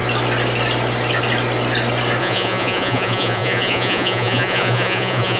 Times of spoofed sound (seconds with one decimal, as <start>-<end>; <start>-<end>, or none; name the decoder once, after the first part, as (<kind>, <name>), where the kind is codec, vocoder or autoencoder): 2.2-5.4 (vocoder, Vocos)

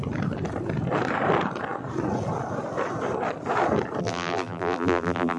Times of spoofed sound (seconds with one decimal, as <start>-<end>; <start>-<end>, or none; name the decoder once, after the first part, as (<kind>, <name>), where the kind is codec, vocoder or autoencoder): 4.0-5.4 (vocoder, BigVGAN v2)

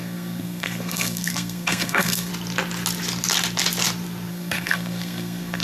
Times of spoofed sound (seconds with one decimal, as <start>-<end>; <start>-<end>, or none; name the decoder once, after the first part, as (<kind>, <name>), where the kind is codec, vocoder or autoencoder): 0.0-2.3 (codec, SNAC); 4.3-5.6

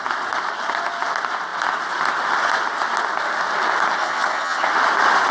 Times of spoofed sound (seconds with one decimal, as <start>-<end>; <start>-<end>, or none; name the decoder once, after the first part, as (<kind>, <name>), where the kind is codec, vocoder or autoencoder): 4.0-4.7 (vocoder, HiFi-GAN)

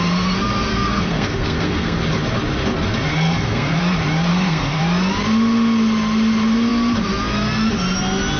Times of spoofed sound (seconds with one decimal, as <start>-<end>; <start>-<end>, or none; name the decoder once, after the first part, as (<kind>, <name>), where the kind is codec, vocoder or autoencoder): 0.7-2.0 (codec, SNAC); 3.1-3.8; 4.3-4.8